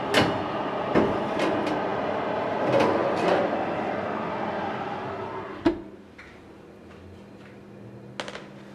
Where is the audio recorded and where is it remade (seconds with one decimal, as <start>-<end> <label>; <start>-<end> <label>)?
0.0-8.7 recorded